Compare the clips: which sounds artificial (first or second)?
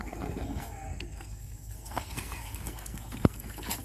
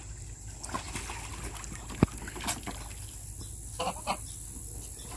first